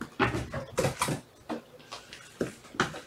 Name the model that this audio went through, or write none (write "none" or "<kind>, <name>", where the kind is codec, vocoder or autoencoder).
none